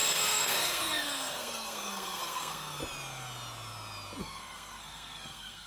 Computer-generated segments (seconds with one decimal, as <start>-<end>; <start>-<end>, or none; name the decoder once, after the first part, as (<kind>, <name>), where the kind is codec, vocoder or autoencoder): 0.0-2.8 (codec, SNAC); 4.2-5.7